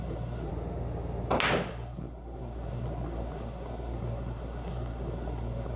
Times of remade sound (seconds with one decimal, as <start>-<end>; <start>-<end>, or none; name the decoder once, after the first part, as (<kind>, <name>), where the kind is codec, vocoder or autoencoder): 0.0-0.5 (codec, SNAC); 1.7-5.8